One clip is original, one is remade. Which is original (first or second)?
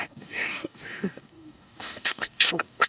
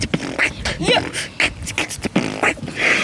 second